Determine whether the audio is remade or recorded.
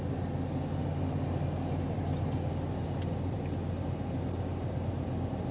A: recorded